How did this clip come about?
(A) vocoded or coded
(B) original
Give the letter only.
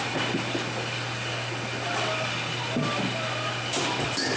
B